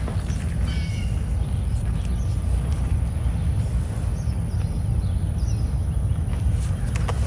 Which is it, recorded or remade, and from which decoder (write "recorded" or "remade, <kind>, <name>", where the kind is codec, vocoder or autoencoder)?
recorded